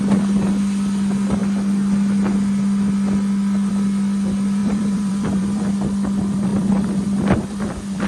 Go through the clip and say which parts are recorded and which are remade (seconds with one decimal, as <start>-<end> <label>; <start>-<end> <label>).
0.0-4.6 recorded; 4.6-5.6 remade; 5.6-6.5 recorded; 6.5-8.1 remade